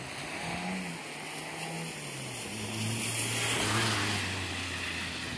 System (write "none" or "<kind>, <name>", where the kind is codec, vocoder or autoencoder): none